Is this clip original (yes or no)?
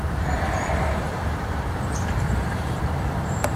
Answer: no